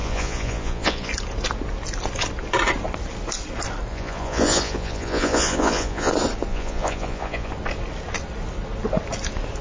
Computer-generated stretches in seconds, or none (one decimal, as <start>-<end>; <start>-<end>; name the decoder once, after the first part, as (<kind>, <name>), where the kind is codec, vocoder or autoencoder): 0.0-1.1 (vocoder, Vocos); 3.9-6.1; 6.5-7.5